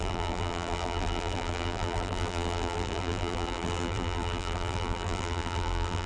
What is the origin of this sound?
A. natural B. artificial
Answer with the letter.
B